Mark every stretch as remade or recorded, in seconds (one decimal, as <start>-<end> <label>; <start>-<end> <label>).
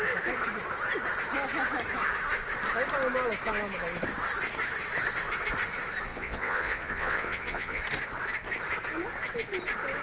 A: 0.0-6.1 recorded; 6.1-7.8 remade; 7.8-10.0 recorded